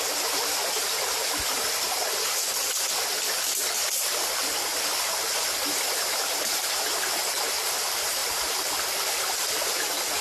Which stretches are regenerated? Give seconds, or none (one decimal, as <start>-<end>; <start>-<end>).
none